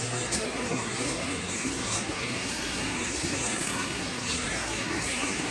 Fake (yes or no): yes